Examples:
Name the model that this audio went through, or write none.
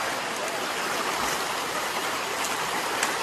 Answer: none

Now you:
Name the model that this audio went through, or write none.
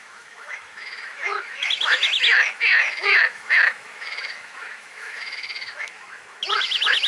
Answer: autoencoder, DAC-VAE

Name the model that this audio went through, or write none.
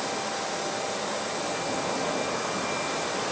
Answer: none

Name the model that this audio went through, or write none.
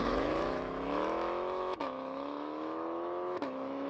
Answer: autoencoder, DAC-VAE